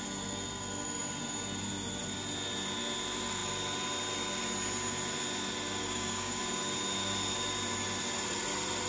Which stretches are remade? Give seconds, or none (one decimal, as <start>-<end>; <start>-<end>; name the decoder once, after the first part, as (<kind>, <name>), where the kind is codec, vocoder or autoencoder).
5.8-6.4 (codec, DAC)